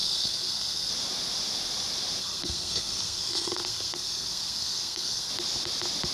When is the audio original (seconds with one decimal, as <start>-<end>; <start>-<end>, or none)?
0.9-2.2; 5.3-6.1